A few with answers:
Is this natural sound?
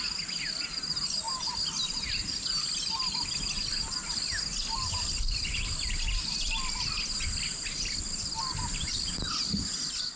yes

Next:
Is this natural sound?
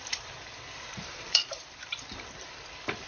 no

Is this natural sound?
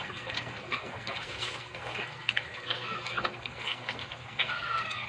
no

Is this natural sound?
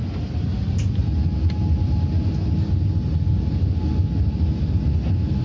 yes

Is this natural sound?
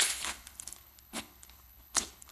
no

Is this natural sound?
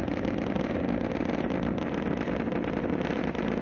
yes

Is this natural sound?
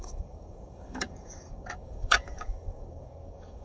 no